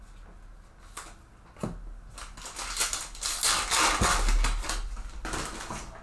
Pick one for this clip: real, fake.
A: real